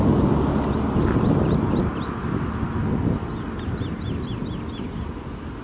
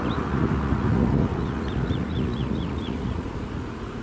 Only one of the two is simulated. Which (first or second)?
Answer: second